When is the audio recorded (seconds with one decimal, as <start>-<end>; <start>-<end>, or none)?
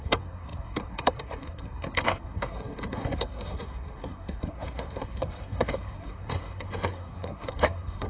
none